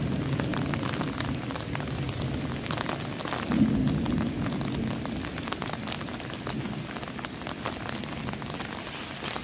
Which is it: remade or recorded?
recorded